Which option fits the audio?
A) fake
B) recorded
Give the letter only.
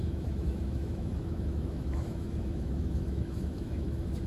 A